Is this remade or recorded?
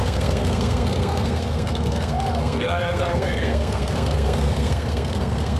remade